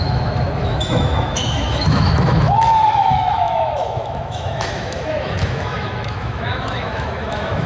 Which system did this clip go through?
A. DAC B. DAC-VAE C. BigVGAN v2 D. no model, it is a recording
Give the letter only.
B